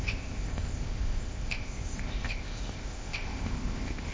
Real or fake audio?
fake